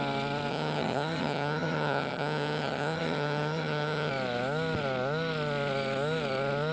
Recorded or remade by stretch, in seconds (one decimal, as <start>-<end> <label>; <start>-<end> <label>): 0.0-0.5 recorded; 0.5-4.1 remade; 4.1-6.7 recorded